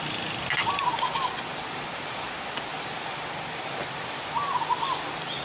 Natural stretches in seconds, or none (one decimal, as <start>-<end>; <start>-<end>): 0.0-5.4